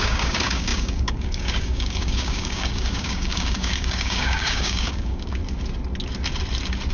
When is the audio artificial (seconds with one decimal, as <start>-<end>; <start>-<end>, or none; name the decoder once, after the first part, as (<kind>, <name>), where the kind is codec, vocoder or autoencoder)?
0.0-5.4 (codec, DAC)